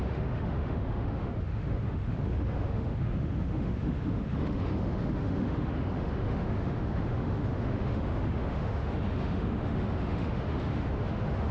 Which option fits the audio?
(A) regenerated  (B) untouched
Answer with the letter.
A